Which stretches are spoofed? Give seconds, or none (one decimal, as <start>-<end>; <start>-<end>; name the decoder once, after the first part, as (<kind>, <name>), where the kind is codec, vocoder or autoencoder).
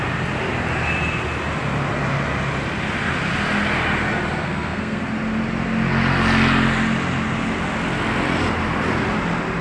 4.4-5.0 (codec, SNAC)